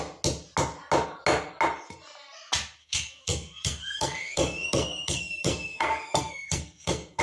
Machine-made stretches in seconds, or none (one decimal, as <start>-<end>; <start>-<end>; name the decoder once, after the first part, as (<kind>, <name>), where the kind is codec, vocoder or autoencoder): 2.8-7.2 (codec, SNAC)